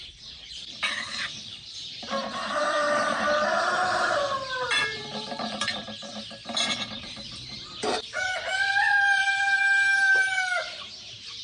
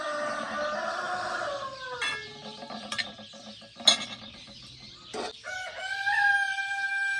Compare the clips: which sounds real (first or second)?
second